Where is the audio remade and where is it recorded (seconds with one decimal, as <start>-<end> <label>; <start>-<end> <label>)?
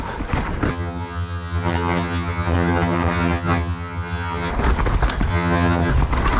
0.0-0.7 recorded; 0.7-4.5 remade; 4.5-5.3 recorded; 5.3-5.9 remade; 5.9-6.4 recorded